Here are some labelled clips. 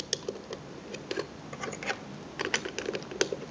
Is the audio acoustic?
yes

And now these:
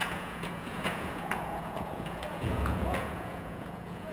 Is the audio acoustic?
no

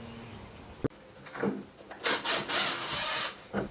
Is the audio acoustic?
yes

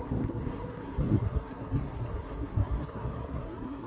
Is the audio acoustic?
no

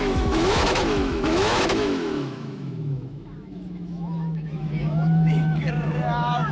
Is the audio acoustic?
no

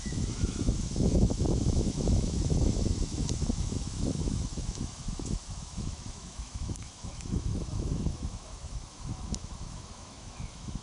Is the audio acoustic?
no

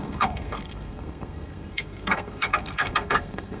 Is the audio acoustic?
no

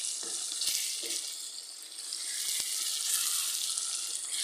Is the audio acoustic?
yes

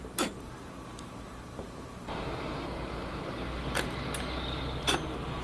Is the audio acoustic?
yes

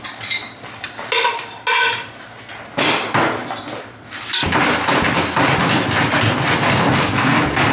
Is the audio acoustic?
yes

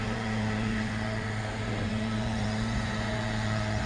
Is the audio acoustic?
no